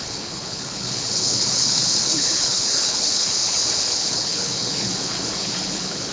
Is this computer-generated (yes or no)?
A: yes